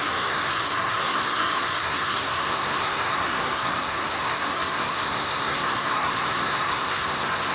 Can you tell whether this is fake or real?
fake